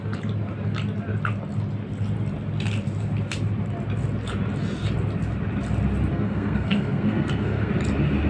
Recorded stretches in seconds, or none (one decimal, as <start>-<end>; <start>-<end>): 0.0-6.1; 7.7-8.3